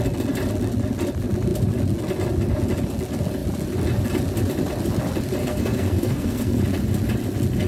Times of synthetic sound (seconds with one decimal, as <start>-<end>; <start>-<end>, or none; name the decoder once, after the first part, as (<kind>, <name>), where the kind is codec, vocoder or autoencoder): 5.4-6.6 (codec, SNAC)